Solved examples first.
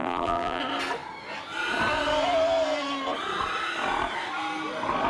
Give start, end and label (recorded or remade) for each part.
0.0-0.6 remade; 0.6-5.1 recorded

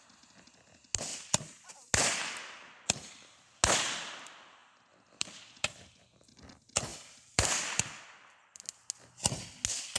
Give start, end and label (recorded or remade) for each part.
0.0-1.1 recorded; 1.1-1.7 remade; 1.7-4.6 recorded; 4.6-5.7 remade; 5.7-6.9 recorded; 6.9-8.6 remade; 8.6-10.0 recorded